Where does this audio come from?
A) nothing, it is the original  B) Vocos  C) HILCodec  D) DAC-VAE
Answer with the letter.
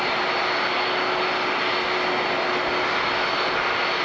A